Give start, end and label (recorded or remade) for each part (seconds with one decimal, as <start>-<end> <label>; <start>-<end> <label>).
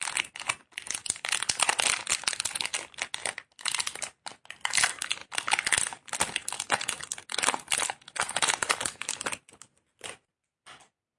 0.0-11.2 recorded